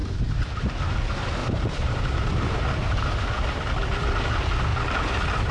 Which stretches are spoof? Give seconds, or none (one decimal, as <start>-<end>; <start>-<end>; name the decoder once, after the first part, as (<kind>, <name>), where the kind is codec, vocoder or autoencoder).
0.0-1.0 (vocoder, BigVGAN v2); 1.4-2.0